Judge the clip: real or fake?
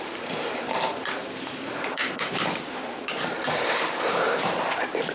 fake